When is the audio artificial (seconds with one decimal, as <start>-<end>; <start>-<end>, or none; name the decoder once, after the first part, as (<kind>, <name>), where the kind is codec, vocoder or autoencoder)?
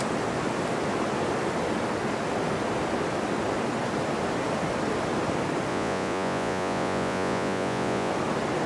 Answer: 5.7-8.1 (vocoder, Vocos)